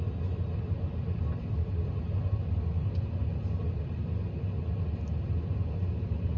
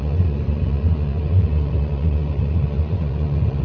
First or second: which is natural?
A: first